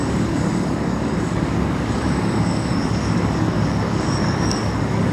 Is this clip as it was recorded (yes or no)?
no